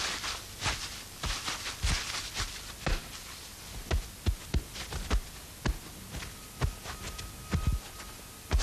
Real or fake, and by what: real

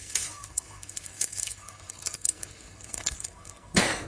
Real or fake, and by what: fake, codec, SNAC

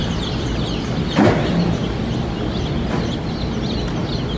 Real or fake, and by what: real